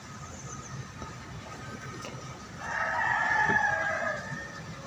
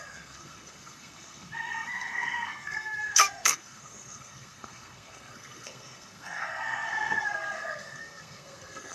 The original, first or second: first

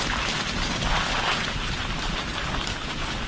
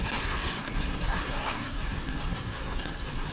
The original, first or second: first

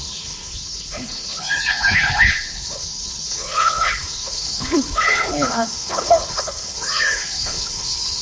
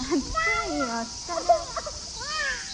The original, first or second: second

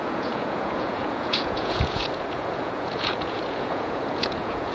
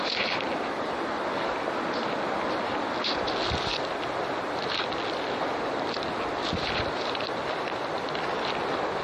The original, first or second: second